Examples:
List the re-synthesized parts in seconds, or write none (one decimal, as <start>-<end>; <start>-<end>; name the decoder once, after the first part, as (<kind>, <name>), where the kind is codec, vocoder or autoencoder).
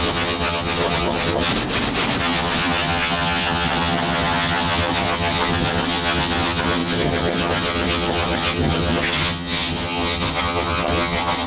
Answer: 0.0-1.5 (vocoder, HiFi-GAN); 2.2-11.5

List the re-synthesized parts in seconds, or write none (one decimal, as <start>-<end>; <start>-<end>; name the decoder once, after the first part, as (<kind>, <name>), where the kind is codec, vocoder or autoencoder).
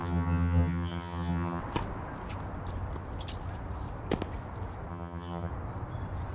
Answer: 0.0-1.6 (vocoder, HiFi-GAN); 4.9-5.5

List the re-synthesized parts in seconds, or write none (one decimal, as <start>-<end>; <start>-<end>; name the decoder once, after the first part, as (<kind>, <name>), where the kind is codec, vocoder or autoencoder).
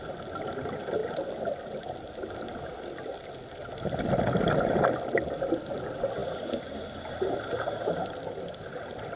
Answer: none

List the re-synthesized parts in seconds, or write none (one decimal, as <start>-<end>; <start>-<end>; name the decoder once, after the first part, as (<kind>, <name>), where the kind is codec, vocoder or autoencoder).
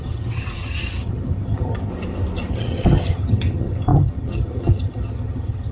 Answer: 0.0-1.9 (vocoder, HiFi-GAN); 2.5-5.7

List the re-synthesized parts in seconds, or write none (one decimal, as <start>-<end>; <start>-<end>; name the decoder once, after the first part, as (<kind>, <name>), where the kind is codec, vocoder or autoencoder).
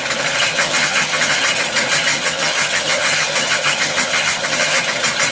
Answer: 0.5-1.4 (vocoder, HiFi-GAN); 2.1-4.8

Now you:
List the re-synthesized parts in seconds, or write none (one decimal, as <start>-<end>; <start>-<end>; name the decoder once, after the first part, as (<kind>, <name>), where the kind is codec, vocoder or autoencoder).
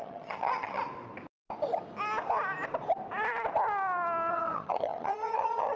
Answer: 0.0-0.8 (vocoder, HiFi-GAN); 4.3-5.8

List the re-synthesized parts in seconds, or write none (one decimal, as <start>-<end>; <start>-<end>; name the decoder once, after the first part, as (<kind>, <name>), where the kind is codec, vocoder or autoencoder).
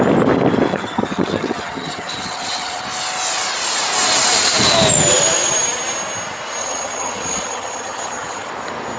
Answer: 0.7-2.8 (vocoder, HiFi-GAN); 6.6-8.5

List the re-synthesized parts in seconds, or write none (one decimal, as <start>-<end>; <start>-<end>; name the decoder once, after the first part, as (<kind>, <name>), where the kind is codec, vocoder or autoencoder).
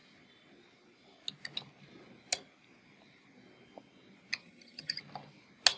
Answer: 4.4-5.0 (vocoder, HiFi-GAN)